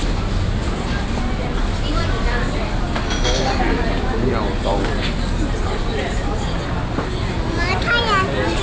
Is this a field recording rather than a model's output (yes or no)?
yes